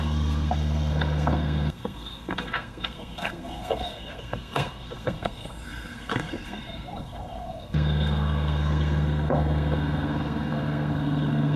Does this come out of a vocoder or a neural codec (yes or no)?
yes